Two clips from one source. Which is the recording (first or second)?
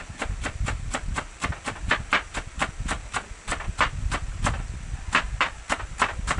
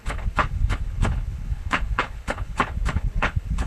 first